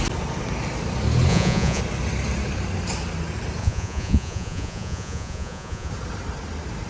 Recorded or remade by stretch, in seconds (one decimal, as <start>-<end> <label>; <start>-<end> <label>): 0.0-1.3 recorded; 1.3-1.8 remade; 1.8-3.6 recorded; 3.6-5.9 remade; 5.9-6.9 recorded